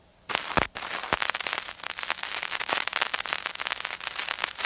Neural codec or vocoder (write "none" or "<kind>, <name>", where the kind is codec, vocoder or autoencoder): none